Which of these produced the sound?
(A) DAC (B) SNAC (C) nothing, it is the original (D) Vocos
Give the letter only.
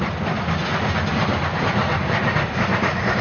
C